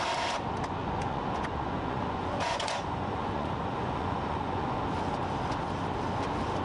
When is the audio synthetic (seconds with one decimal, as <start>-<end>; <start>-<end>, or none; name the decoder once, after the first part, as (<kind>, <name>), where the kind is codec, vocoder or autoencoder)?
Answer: 0.8-4.8 (vocoder, Vocos)

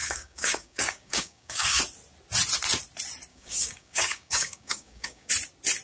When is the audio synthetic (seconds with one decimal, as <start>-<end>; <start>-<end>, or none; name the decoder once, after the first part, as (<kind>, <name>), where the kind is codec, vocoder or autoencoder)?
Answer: 0.0-1.8 (codec, DAC); 3.3-5.3

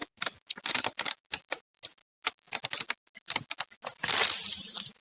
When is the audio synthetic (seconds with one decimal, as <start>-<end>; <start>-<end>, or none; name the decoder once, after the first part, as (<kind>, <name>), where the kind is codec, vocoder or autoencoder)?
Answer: none